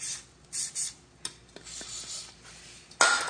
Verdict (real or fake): real